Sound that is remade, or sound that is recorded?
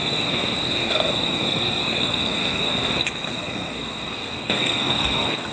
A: remade